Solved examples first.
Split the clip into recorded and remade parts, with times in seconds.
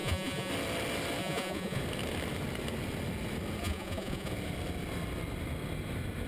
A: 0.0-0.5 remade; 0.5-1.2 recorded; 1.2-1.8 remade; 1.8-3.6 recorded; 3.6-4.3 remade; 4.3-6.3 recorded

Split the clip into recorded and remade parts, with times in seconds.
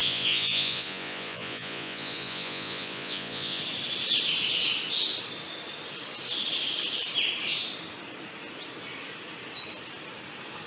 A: 0.0-3.6 remade; 3.6-10.7 recorded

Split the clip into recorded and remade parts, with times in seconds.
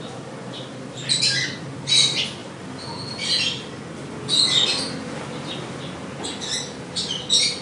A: 0.0-7.6 recorded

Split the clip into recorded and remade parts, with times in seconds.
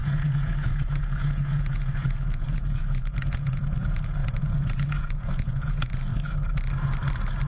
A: 0.0-6.1 remade; 6.1-7.5 recorded